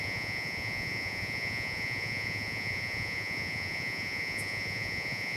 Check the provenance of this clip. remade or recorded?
remade